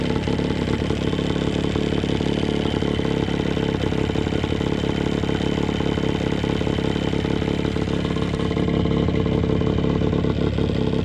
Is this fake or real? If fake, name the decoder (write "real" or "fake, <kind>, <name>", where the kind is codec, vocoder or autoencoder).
real